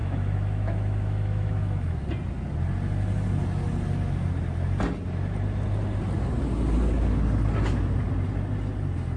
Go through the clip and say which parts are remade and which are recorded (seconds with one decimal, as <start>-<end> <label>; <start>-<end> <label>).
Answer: 0.0-2.0 remade; 2.0-9.2 recorded